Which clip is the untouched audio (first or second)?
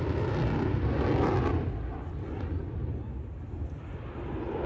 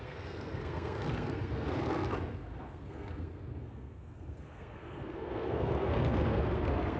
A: first